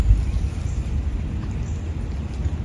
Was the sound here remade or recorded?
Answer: recorded